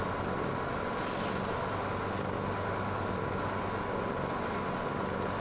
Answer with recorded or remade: recorded